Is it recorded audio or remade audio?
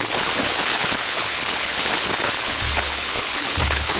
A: remade